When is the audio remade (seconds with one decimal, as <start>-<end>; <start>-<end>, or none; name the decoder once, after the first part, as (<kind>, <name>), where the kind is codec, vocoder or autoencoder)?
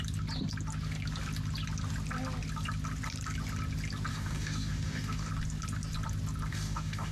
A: 4.1-5.3 (codec, DAC); 6.5-7.1